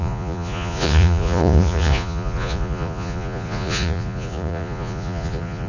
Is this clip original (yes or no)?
no